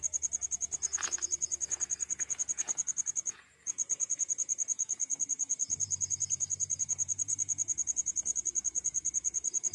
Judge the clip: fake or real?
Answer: fake